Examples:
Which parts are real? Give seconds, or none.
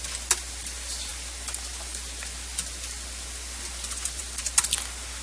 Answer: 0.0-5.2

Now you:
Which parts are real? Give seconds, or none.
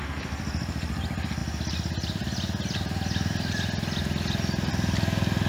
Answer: 0.0-5.5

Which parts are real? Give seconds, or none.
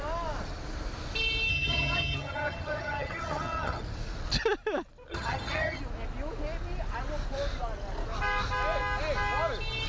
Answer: 0.0-1.5; 3.8-5.1; 5.8-9.9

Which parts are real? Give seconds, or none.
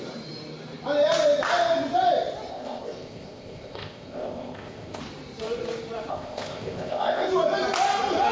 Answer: 0.0-2.5; 5.0-6.1; 7.3-8.3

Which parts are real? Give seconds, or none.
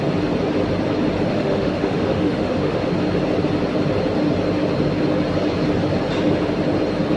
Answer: 0.0-1.3; 2.9-7.2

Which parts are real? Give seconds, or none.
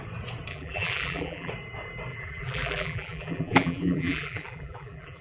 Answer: 0.0-0.5; 1.5-2.1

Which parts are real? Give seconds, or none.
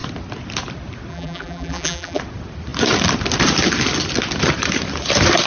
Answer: 0.0-1.1; 2.2-5.5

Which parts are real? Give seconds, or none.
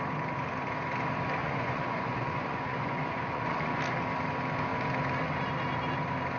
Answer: 0.0-1.4; 3.8-6.4